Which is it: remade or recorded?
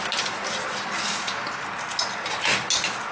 recorded